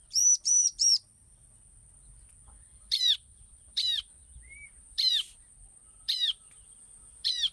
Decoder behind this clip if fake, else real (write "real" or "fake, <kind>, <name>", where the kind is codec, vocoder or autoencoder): fake, vocoder, BigVGAN v2